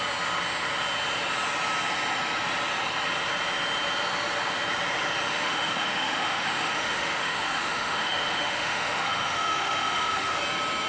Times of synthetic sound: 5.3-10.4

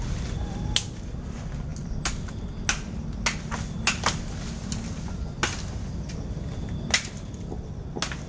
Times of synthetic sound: none

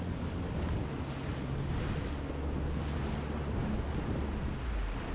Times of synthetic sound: none